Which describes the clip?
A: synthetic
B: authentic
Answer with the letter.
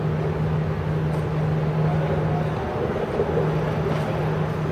B